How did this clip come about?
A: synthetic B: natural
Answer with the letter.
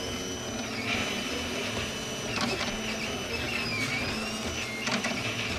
B